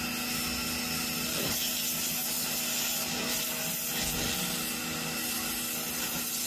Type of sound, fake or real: real